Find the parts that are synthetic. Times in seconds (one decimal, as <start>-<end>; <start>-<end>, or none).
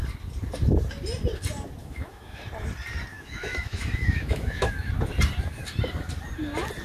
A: 1.8-2.4; 3.1-4.9